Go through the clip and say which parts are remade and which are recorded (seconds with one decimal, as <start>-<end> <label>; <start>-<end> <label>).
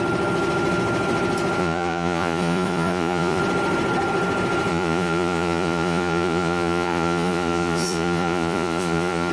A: 0.0-1.6 recorded; 1.6-3.4 remade; 3.4-4.7 recorded; 4.7-9.3 remade